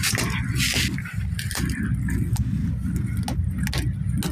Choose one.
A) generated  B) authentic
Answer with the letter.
B